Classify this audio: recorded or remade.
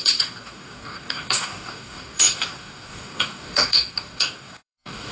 remade